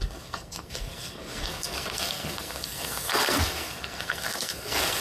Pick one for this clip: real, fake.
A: fake